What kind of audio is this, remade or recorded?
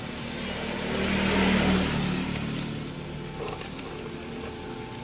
recorded